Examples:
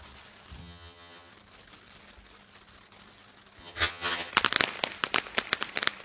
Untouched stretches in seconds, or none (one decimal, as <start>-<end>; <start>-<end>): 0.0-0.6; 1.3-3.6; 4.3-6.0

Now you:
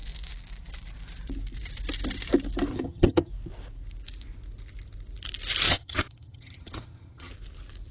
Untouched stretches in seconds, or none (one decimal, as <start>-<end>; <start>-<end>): 0.0-2.7; 3.3-5.7; 7.3-7.9

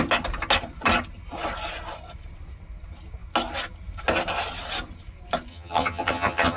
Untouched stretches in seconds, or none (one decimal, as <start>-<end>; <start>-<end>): 0.0-5.5